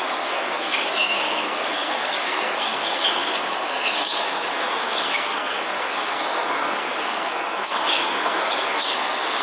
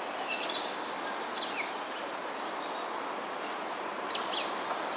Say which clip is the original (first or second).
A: second